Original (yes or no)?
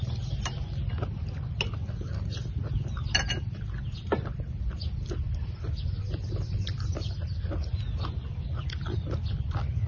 yes